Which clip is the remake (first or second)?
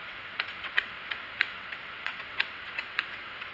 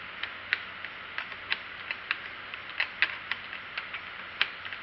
first